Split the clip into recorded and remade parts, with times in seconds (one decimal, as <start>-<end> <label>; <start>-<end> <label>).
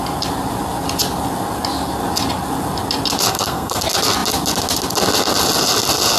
0.0-3.3 recorded; 3.3-3.8 remade; 3.8-6.2 recorded